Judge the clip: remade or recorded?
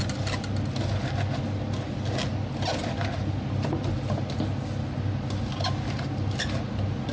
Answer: recorded